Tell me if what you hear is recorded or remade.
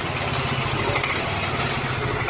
recorded